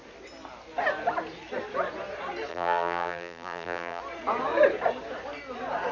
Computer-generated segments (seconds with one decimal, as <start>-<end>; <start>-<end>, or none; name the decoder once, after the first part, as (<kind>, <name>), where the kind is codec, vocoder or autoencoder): 2.5-4.0 (vocoder, BigVGAN v2)